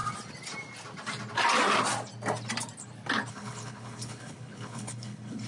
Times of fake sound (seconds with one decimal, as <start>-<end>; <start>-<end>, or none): 3.3-5.5